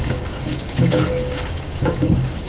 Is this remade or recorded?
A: remade